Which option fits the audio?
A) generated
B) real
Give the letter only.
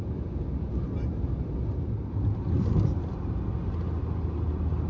B